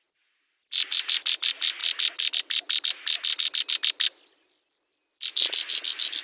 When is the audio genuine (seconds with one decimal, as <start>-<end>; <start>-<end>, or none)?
0.0-6.2